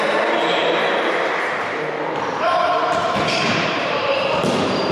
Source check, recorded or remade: remade